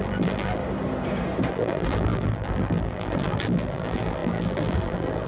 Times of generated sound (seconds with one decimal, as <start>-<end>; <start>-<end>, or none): 0.0-0.6; 1.5-5.3